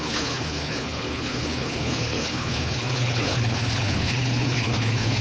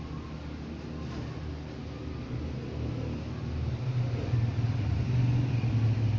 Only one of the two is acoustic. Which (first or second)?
second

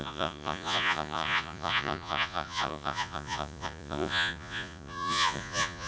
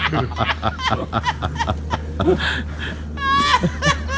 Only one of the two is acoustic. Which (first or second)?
second